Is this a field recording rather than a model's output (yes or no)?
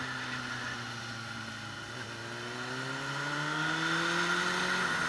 yes